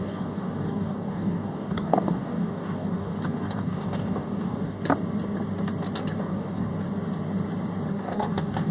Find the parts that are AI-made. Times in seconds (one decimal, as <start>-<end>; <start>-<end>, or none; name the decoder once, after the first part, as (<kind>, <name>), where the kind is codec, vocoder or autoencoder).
0.0-4.8 (codec, DAC); 6.2-6.7; 7.9-8.7